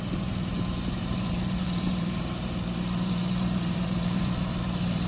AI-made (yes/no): yes